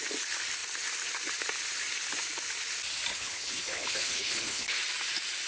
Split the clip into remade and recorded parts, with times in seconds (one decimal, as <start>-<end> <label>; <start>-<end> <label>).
0.0-3.1 recorded; 3.1-4.8 remade; 4.8-5.5 recorded